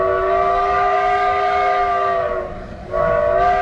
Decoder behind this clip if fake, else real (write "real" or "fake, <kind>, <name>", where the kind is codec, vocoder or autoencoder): fake, codec, DAC